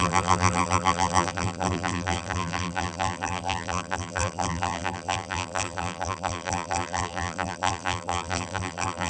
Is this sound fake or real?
fake